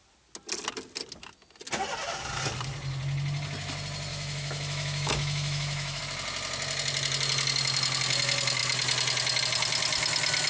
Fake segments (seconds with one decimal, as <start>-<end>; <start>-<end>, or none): 4.1-6.0